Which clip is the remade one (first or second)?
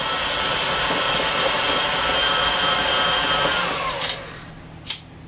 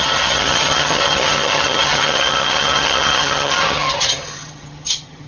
second